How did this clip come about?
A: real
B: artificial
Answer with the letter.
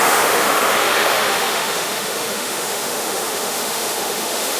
B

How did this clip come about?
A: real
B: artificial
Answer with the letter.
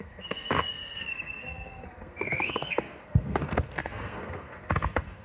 B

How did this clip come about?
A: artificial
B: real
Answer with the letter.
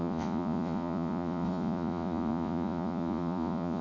A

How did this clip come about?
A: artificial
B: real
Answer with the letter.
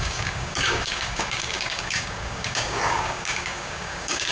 A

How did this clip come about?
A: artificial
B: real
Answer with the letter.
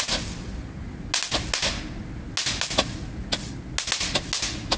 B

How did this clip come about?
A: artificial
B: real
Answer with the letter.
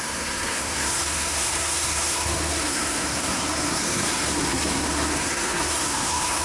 A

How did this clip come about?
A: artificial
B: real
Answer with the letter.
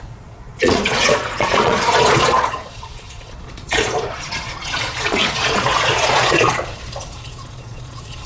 A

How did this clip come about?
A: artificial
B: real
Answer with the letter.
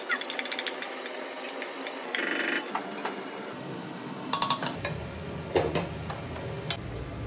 B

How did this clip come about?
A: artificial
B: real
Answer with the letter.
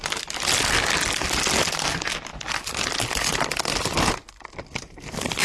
B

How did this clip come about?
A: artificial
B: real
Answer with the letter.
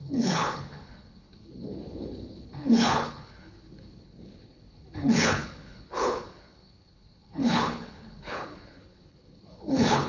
A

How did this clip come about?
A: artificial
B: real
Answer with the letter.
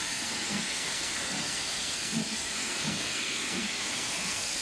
A